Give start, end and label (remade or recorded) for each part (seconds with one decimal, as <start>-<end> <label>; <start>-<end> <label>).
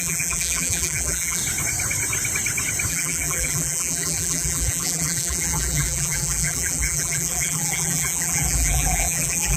0.0-1.4 remade; 1.4-2.9 recorded; 2.9-9.6 remade